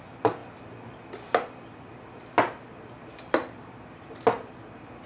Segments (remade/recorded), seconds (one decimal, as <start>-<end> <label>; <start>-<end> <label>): 0.0-5.1 recorded